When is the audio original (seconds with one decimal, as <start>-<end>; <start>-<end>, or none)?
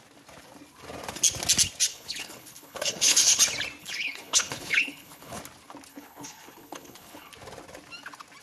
0.0-1.9; 3.4-3.8; 5.4-5.9; 7.3-8.4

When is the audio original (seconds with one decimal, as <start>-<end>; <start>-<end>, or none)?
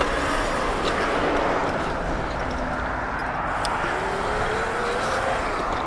0.0-5.9